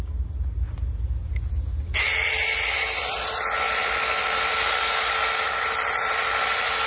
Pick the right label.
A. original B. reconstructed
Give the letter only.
A